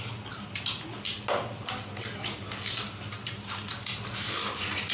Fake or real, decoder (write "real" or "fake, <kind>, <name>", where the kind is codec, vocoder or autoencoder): real